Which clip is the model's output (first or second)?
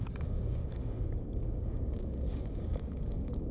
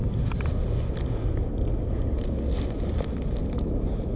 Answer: first